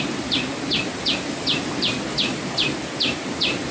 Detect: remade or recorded recorded